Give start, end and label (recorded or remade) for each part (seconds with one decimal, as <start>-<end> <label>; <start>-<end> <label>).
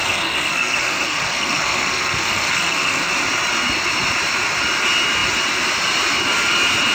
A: 0.0-3.1 remade; 3.1-6.9 recorded